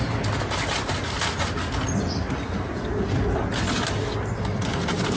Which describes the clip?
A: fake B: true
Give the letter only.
B